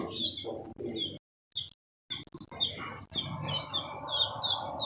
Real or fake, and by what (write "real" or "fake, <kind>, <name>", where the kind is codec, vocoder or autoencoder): real